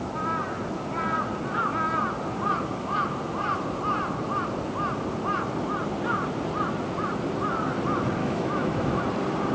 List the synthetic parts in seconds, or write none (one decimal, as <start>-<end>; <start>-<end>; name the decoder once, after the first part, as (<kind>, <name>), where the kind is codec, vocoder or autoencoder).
8.2-9.0 (autoencoder, DAC-VAE)